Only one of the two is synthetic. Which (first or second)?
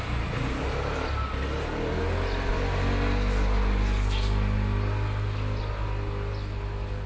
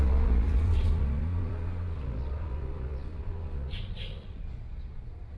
second